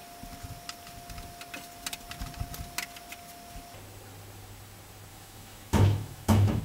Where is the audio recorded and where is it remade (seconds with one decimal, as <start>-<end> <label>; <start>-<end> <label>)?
0.0-5.1 recorded; 5.1-6.6 remade